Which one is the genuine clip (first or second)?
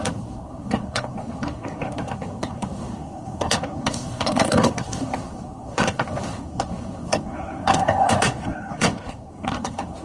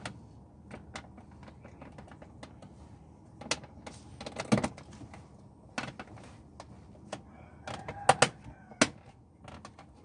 second